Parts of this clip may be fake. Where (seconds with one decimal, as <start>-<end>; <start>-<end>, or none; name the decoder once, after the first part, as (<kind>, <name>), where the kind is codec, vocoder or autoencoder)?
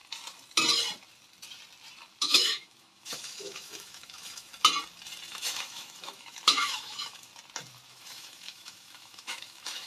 2.2-4.5 (autoencoder, DAC-VAE); 5.3-7.3; 7.9-9.9